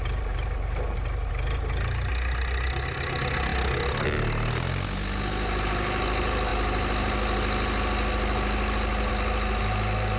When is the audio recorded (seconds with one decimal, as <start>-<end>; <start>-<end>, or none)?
0.0-10.2